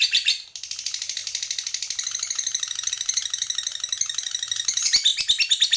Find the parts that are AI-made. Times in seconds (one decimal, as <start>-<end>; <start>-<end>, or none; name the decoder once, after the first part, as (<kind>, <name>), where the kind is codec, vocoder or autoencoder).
none